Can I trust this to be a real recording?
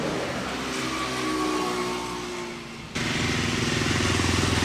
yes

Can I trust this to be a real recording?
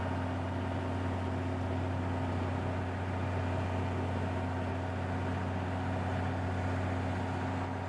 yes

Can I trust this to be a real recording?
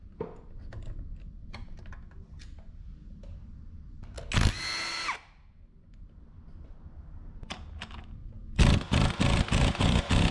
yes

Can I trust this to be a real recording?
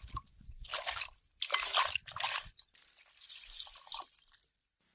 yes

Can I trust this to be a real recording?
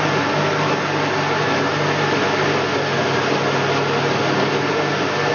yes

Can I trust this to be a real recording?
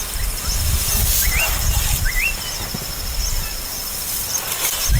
yes